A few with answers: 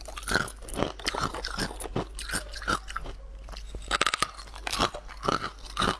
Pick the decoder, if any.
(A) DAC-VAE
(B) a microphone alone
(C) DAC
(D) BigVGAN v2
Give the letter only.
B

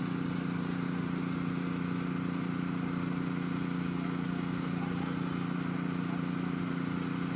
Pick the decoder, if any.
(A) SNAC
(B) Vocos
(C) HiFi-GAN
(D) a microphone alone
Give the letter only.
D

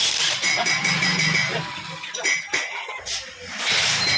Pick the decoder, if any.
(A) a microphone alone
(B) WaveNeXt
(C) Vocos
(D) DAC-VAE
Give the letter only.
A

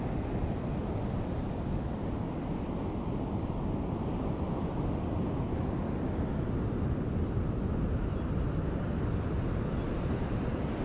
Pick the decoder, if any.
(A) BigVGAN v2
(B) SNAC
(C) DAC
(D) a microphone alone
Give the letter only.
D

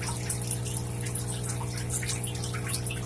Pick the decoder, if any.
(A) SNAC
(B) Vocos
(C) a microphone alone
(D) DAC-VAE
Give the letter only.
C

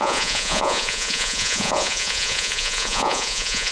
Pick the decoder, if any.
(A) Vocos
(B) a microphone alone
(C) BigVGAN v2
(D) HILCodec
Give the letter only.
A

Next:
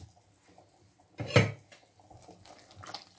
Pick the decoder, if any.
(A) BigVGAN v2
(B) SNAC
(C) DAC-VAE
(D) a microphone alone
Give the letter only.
D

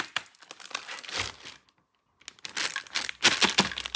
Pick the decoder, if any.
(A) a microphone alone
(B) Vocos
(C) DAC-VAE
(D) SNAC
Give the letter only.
A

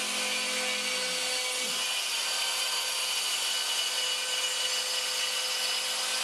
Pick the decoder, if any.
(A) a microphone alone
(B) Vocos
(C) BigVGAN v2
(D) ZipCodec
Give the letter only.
A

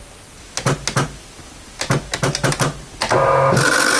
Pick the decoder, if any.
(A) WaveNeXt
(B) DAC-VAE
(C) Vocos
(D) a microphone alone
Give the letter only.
D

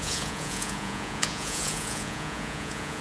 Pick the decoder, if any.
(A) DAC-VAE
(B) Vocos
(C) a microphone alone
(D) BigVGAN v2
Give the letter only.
B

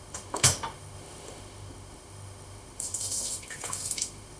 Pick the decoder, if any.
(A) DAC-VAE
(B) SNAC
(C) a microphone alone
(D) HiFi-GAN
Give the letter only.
A